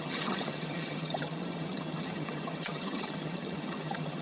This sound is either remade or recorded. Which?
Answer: remade